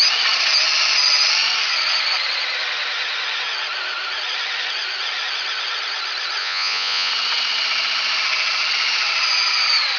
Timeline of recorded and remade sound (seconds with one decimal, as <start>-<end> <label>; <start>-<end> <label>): 0.0-6.4 recorded; 6.4-7.1 remade; 7.1-10.0 recorded